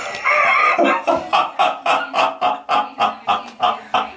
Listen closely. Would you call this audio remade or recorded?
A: recorded